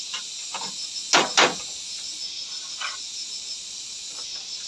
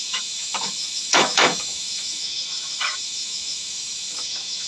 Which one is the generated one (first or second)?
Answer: second